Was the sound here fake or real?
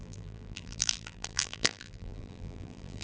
fake